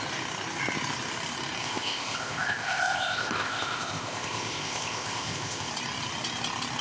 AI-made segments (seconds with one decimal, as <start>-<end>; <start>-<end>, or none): 1.6-5.7